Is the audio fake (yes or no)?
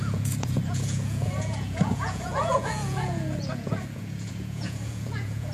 yes